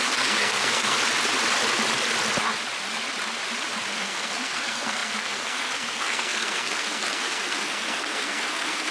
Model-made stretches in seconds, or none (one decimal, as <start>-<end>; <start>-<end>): 0.0-1.0; 3.9-8.9